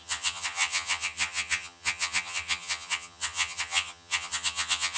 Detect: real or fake fake